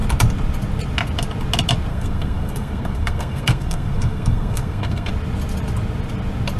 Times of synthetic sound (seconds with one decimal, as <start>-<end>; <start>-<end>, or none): 1.9-5.1